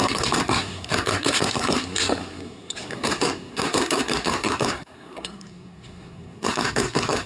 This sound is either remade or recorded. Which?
remade